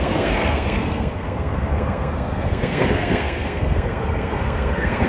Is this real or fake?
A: fake